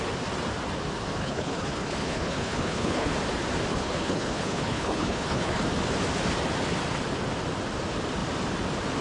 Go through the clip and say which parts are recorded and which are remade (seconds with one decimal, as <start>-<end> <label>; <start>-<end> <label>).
0.0-1.2 recorded; 1.2-3.1 remade; 3.1-3.7 recorded; 3.7-5.6 remade; 5.6-9.0 recorded